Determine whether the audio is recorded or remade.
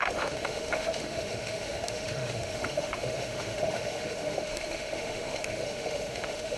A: remade